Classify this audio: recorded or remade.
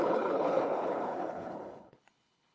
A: remade